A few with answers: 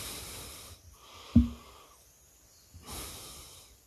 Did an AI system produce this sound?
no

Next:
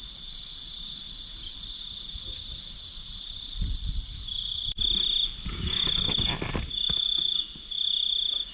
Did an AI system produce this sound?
no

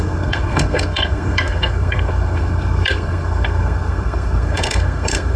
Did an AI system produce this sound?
yes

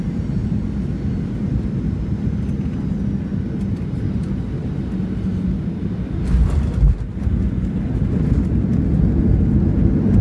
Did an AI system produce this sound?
no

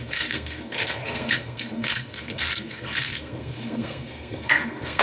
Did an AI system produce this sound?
yes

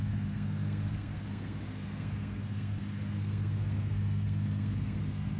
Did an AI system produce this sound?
yes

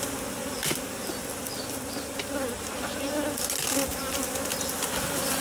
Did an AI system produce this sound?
no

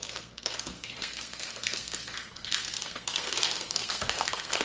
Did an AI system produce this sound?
yes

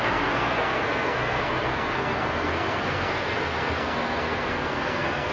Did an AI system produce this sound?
yes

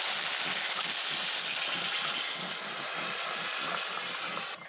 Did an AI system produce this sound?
no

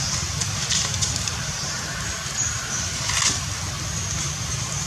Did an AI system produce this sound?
no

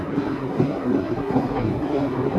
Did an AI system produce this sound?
yes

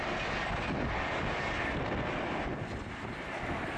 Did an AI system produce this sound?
no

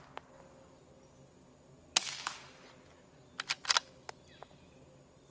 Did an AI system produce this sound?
no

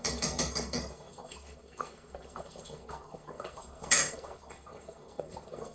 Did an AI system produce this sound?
yes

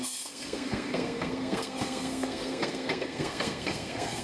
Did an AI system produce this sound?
yes